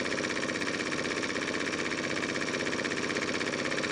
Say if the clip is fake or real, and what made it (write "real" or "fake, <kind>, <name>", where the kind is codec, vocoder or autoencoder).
real